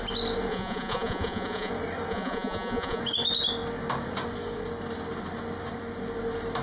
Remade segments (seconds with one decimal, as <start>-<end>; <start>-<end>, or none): 0.5-1.7; 2.1-3.0